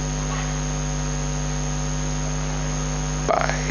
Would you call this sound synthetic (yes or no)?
no